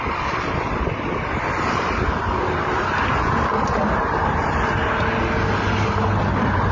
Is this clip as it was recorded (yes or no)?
yes